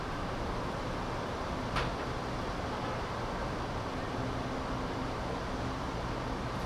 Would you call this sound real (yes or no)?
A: no